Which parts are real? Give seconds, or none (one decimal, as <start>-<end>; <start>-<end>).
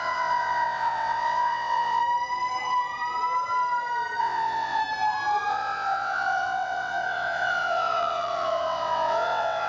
2.0-4.2; 4.8-5.5